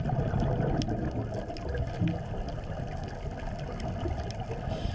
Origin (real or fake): real